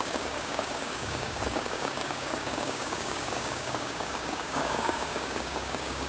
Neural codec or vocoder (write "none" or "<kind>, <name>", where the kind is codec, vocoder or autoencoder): codec, DAC